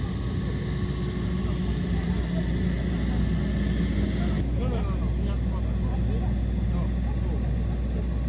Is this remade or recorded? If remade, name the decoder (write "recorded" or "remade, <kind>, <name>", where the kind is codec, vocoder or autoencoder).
recorded